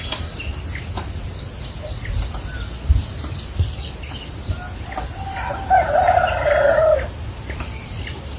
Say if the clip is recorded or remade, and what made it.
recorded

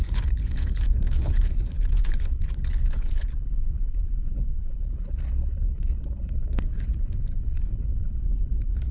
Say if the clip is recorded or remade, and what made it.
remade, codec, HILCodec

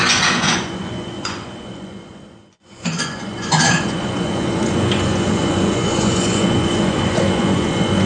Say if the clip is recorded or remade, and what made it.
remade, vocoder, Vocos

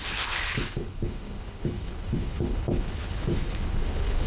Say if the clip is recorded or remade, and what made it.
remade, codec, HILCodec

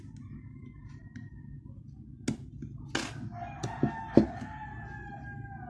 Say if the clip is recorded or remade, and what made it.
recorded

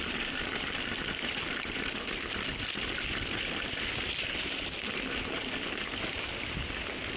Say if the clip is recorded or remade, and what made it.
recorded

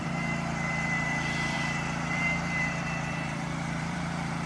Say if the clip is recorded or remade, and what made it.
remade, vocoder, BigVGAN v2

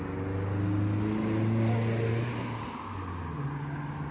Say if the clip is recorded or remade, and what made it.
recorded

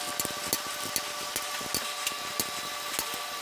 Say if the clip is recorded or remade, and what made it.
recorded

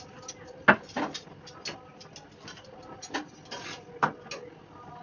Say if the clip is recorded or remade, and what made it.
recorded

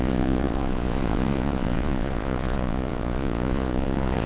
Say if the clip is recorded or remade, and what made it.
remade, vocoder, Vocos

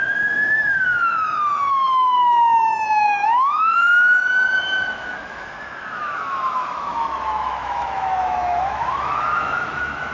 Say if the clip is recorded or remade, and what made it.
remade, autoencoder, DAC-VAE